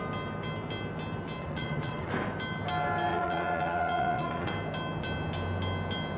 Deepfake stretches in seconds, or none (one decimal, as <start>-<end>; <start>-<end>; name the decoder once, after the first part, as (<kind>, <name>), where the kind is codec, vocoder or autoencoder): 1.4-2.1 (vocoder, Vocos); 3.1-4.5